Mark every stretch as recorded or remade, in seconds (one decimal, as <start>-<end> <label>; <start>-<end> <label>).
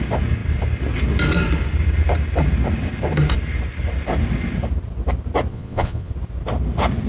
0.0-5.5 recorded; 5.5-6.1 remade; 6.1-7.1 recorded